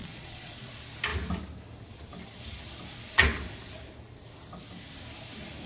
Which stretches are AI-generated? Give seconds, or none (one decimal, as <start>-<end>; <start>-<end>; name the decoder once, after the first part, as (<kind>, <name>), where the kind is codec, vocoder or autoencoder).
0.0-0.7 (vocoder, Vocos)